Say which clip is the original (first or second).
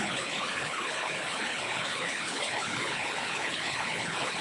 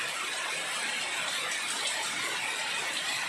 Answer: second